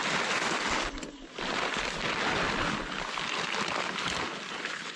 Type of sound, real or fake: real